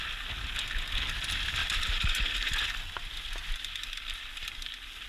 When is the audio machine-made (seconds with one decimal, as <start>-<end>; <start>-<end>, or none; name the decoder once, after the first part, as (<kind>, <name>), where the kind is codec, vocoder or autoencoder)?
none